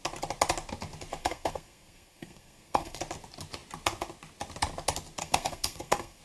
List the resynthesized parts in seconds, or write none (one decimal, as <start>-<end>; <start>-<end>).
1.2-3.0; 5.2-6.2